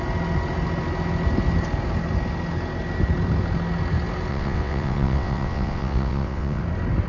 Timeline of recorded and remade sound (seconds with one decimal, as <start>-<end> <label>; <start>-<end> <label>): 0.0-4.3 recorded; 4.3-6.6 remade; 6.6-7.1 recorded